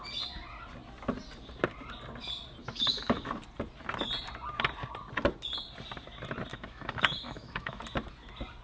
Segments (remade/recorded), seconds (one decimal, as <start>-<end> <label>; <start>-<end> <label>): 0.0-2.6 recorded; 2.6-3.3 remade; 3.3-6.5 recorded; 6.5-7.8 remade; 7.8-8.6 recorded